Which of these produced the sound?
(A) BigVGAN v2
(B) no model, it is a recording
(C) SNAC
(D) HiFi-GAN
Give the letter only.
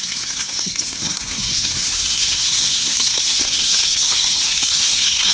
C